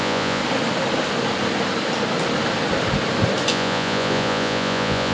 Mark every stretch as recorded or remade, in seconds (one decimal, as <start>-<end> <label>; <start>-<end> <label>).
0.0-0.4 remade; 0.4-3.5 recorded; 3.5-5.1 remade